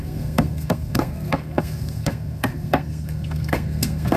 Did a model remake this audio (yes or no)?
yes